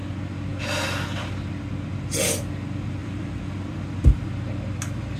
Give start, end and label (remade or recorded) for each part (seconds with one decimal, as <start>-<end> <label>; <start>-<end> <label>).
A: 0.0-3.0 recorded; 3.0-4.1 remade; 4.1-5.2 recorded